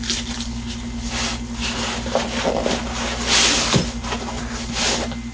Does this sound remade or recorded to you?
recorded